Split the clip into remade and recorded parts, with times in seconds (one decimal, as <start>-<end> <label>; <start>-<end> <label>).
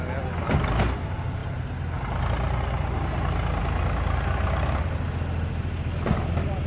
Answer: 0.0-6.7 recorded